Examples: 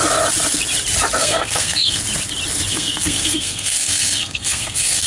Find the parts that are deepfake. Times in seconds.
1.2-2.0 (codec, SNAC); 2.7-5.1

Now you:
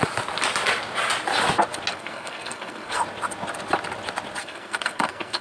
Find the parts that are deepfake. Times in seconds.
1.9-3.0 (codec, SNAC); 4.4-5.4